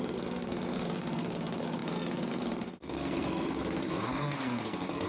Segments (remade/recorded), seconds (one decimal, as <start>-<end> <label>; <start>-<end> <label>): 0.0-5.1 remade